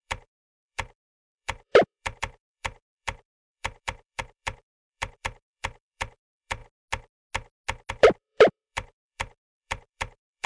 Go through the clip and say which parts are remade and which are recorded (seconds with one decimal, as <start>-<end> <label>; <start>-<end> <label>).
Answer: 0.0-6.6 remade; 6.6-7.9 recorded; 7.9-10.5 remade